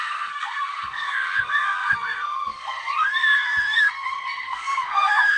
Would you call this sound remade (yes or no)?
yes